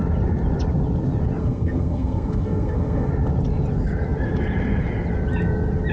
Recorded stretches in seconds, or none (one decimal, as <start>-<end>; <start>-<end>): 0.0-1.4; 3.1-5.9